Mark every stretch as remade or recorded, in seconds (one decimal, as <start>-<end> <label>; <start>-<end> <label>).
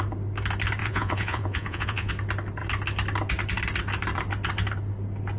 0.0-0.8 recorded; 0.8-2.1 remade; 2.1-5.4 recorded